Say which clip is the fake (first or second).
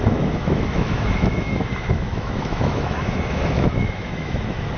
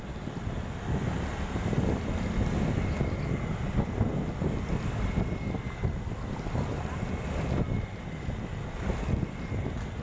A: first